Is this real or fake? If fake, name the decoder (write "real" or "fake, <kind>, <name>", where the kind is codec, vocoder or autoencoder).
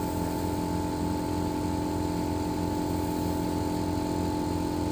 real